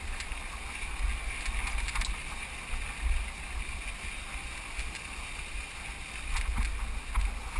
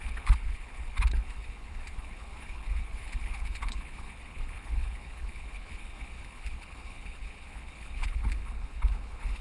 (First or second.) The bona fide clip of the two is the first